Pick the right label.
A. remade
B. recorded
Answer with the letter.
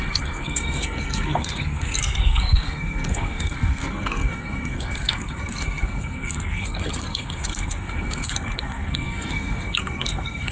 A